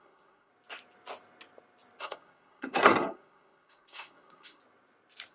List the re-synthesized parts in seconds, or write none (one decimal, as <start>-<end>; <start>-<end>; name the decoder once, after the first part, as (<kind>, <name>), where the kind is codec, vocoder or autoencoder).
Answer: 0.0-0.5 (codec, SNAC); 2.0-4.6